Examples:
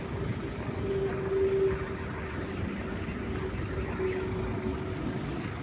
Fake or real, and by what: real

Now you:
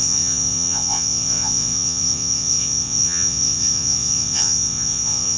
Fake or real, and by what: fake, vocoder, Vocos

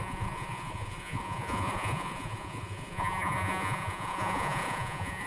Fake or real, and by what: fake, vocoder, Vocos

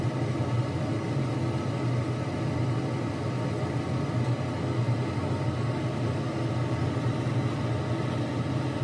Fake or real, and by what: real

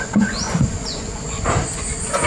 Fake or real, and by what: fake, vocoder, Vocos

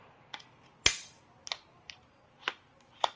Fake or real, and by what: real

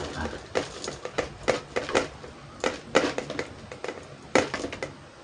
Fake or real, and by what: real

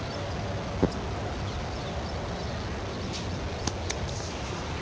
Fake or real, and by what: real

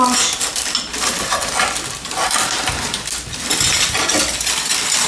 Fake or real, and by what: real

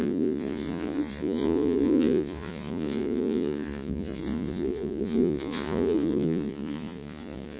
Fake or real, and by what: fake, vocoder, Vocos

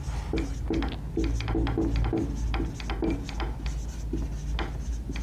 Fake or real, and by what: real